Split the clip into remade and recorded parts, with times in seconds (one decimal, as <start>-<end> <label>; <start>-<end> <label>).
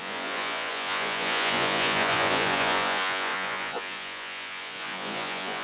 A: 0.0-5.6 remade